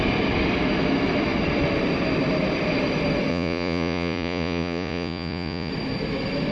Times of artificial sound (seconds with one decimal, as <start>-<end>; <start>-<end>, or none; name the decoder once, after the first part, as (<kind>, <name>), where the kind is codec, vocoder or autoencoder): 3.3-5.7 (vocoder, Vocos)